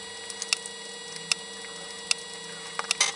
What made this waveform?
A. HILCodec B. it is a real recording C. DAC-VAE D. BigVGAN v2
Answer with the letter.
B